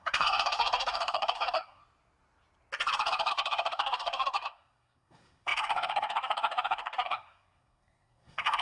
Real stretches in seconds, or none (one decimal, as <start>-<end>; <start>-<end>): 1.8-3.3